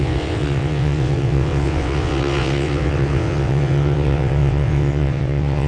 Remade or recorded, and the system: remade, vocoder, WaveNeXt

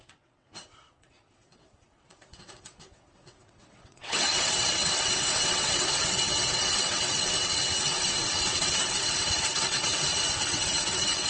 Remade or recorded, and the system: remade, vocoder, WaveNeXt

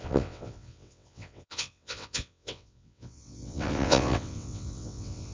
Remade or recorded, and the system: remade, vocoder, WaveNeXt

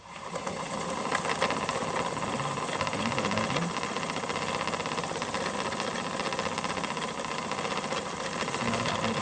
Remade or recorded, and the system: recorded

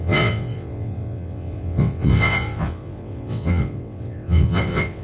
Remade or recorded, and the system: remade, vocoder, WaveNeXt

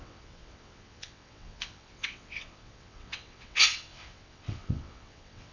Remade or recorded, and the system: remade, vocoder, WaveNeXt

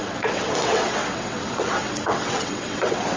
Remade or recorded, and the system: remade, vocoder, WaveNeXt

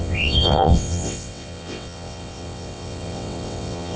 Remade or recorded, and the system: remade, vocoder, WaveNeXt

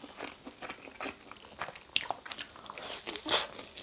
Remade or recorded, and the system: recorded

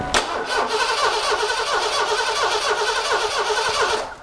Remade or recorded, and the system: recorded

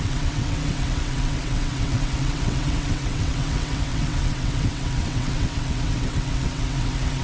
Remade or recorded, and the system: remade, vocoder, WaveNeXt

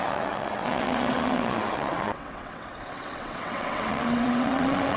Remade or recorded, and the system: remade, vocoder, WaveNeXt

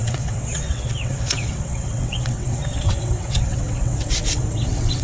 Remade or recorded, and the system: remade, vocoder, WaveNeXt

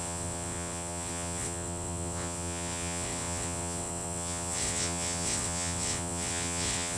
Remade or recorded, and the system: remade, vocoder, WaveNeXt